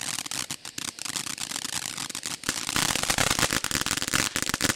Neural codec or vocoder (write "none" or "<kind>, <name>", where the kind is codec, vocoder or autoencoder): none